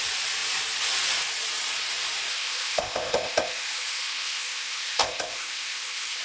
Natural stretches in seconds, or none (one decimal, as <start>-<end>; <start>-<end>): 0.0-2.3